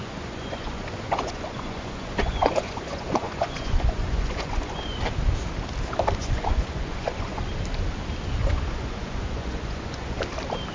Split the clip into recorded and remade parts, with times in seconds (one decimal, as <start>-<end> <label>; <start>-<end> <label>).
0.0-5.0 remade; 5.0-6.2 recorded; 6.2-7.5 remade; 7.5-8.4 recorded; 8.4-10.2 remade; 10.2-10.7 recorded